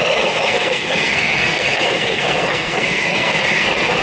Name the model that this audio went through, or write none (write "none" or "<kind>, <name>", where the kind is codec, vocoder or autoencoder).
codec, SNAC